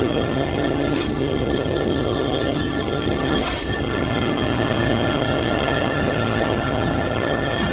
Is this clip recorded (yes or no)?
no